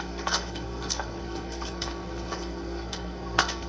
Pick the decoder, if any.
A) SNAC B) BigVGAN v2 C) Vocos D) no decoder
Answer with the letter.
A